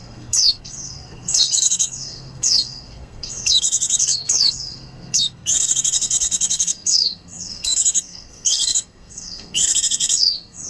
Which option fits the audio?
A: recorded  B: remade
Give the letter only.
B